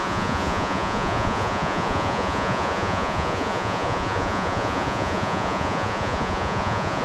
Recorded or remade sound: remade